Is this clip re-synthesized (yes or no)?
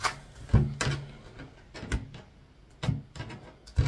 no